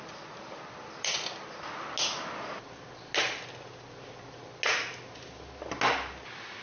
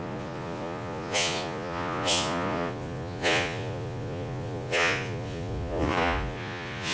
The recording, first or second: first